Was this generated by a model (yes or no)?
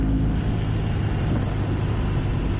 no